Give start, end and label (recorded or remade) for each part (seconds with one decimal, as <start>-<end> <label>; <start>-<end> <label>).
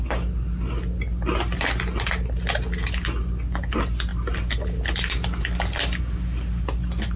0.0-7.2 recorded